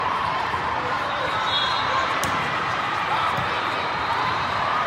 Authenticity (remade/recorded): remade